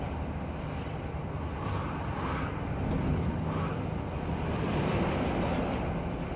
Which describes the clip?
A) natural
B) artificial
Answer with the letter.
A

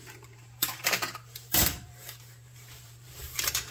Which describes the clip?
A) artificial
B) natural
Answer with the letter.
A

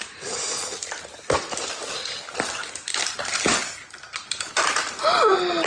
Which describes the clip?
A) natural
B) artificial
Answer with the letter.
A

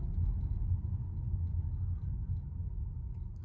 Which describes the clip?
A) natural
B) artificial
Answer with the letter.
A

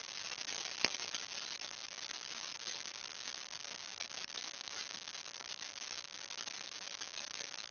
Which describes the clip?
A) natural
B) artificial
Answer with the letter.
A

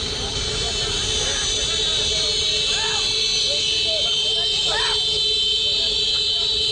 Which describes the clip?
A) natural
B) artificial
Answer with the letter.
A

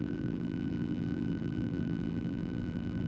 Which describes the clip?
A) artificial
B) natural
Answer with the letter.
A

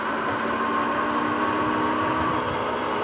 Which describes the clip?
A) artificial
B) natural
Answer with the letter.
B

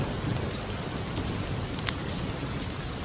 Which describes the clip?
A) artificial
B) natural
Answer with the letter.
B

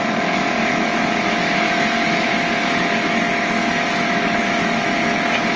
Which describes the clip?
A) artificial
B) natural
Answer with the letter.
A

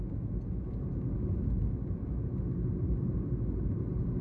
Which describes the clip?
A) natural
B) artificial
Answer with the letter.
A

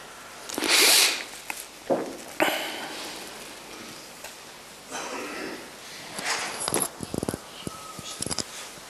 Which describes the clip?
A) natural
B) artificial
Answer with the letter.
A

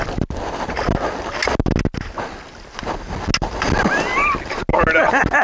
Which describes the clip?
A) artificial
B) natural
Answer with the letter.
B